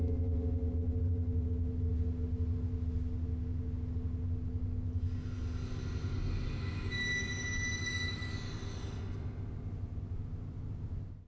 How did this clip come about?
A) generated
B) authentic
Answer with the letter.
B